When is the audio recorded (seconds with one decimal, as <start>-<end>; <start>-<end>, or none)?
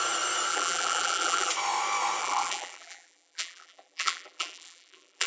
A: 0.0-0.5; 1.5-2.2